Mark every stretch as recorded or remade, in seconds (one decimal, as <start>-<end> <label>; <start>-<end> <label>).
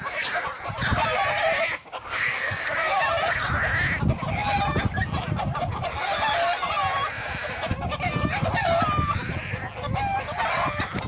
0.0-1.8 recorded; 1.8-3.1 remade; 3.1-11.1 recorded